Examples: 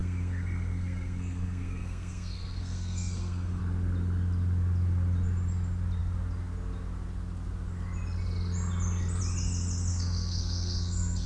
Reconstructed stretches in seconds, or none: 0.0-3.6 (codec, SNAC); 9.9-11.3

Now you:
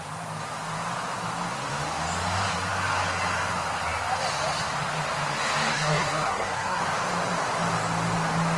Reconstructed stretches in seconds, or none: 5.7-6.8 (codec, SNAC)

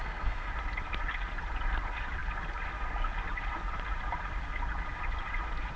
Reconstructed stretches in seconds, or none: 0.0-0.5 (codec, SNAC)

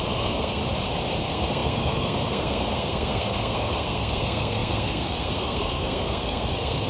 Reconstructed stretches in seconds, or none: 0.0-0.6 (codec, SNAC); 1.2-6.9

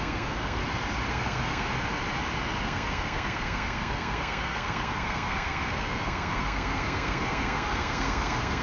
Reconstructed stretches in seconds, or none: 0.0-0.6 (codec, SNAC); 1.1-1.7; 2.6-8.6

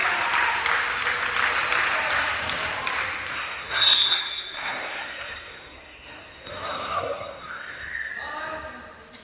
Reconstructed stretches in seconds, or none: 3.3-8.1 (codec, SNAC)